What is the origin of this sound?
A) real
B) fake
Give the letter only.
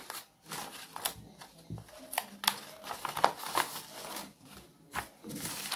A